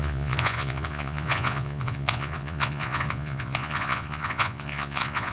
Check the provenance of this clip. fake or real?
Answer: fake